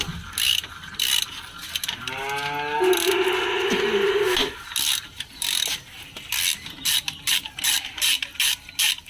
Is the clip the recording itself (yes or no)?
yes